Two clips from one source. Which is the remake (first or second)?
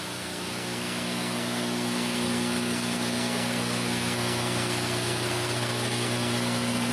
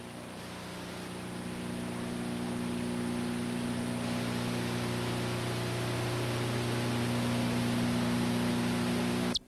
first